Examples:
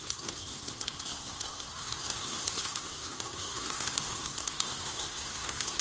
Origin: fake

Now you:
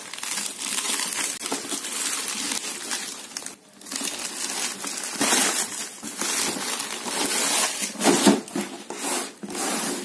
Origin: real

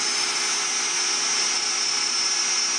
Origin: real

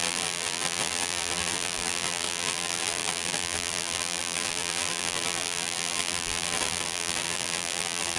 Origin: fake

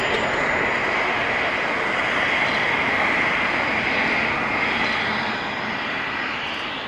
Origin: real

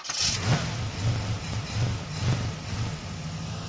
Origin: real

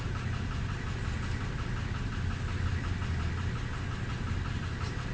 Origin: real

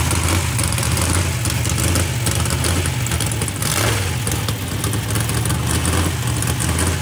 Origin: real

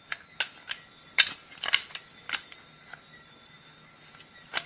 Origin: real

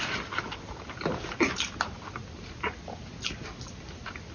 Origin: real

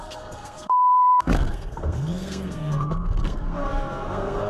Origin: fake